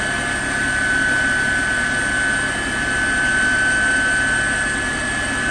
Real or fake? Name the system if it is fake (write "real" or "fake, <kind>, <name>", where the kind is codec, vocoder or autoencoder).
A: real